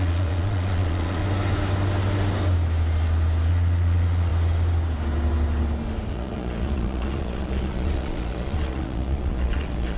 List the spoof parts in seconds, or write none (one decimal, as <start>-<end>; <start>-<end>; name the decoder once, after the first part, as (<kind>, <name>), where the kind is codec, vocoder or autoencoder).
0.0-1.2 (vocoder, Vocos); 3.5-4.3; 6.1-10.0